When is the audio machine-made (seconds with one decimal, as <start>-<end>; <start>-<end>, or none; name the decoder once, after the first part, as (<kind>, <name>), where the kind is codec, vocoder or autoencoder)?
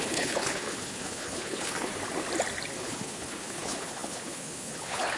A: 0.0-1.9 (codec, HILCodec); 2.8-5.2